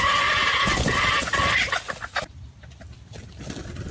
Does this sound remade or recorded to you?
recorded